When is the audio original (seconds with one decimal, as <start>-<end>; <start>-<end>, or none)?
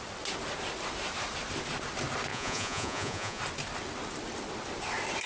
0.0-2.3; 3.4-5.3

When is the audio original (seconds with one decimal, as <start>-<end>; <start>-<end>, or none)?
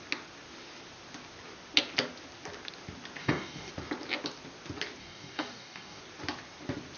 0.0-3.2; 3.7-5.0; 6.0-7.0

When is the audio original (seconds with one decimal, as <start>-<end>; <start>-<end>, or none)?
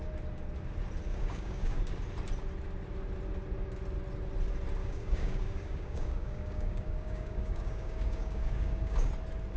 0.0-1.1; 1.8-4.8; 9.1-9.6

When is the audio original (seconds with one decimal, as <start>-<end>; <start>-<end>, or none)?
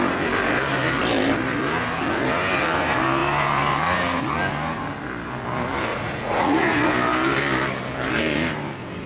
0.0-5.9; 6.9-9.1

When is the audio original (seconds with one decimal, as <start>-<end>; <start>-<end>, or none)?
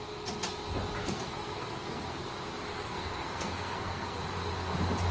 0.0-1.0; 2.2-2.7; 4.2-5.1